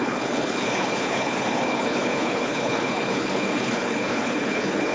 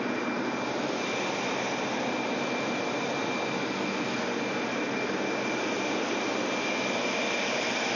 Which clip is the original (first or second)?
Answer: second